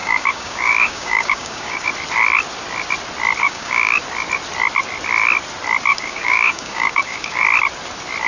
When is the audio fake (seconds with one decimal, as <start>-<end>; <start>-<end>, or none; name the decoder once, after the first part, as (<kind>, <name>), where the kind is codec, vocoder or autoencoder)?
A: 0.0-1.9 (codec, DAC); 3.4-4.0; 5.9-7.4